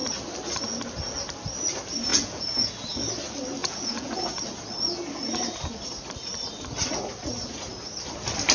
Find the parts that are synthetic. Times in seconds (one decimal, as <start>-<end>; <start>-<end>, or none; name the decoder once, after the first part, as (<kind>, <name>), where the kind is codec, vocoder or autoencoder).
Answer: 2.1-2.7 (vocoder, Vocos); 3.6-4.2

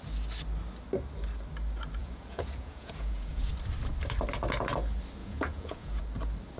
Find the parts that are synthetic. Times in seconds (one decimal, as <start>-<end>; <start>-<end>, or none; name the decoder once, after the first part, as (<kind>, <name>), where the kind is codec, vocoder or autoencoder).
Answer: 2.0-3.5 (vocoder, Vocos); 5.2-6.0

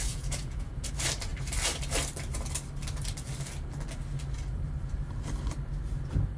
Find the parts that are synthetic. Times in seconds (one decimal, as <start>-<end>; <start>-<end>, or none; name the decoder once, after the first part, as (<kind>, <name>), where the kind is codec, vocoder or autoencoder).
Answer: 0.0-0.9 (vocoder, Vocos)

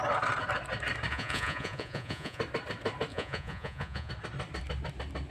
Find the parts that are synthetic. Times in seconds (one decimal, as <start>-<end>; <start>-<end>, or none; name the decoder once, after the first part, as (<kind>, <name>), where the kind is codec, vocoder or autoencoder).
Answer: 1.1-2.4 (vocoder, Vocos); 3.1-4.1

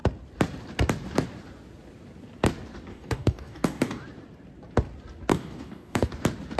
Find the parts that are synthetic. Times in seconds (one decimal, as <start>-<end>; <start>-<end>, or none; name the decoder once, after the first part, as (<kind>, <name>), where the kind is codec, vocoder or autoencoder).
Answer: 2.9-4.0 (codec, DAC); 5.3-6.1